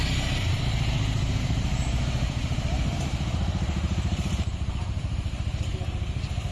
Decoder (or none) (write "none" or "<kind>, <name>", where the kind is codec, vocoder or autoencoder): vocoder, BigVGAN v2